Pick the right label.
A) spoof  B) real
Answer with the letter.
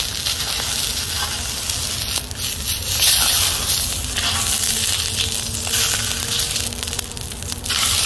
B